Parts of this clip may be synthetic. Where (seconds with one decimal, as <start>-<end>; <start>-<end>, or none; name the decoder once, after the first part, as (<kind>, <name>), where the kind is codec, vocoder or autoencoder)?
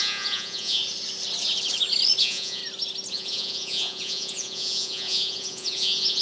0.0-0.8 (vocoder, Vocos); 2.2-2.6; 3.1-6.2